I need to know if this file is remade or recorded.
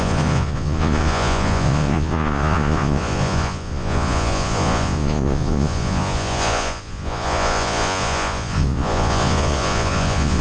remade